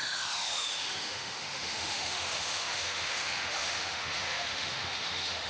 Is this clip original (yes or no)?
no